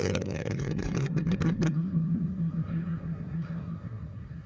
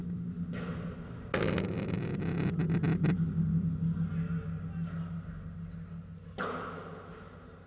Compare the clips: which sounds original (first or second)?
second